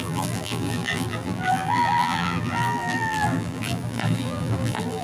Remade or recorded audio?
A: remade